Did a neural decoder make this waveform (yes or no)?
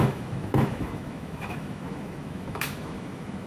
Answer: yes